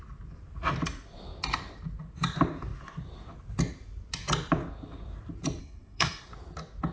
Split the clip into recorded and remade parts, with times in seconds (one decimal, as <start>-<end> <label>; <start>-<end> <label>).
0.0-5.6 recorded; 5.6-6.3 remade; 6.3-6.9 recorded